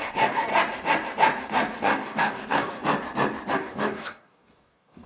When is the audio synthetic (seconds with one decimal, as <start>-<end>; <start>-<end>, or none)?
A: 0.0-0.5; 1.8-2.8; 3.5-5.1